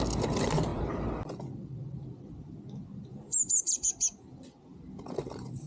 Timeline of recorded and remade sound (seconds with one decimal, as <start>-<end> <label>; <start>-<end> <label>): 0.0-3.1 recorded; 3.1-3.9 remade; 3.9-5.7 recorded